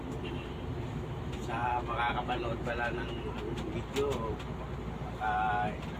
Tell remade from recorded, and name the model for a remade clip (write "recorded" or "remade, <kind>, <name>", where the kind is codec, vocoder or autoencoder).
recorded